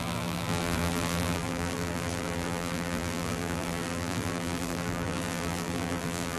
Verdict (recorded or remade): remade